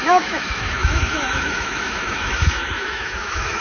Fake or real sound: fake